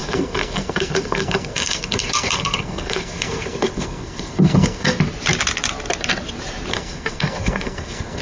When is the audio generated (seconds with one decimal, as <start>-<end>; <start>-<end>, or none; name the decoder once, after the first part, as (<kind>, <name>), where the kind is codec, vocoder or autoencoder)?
0.0-4.9 (codec, SNAC); 6.7-8.2